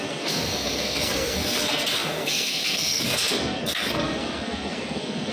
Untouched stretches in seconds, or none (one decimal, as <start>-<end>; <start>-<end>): none